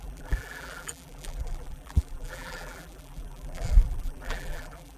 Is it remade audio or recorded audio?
remade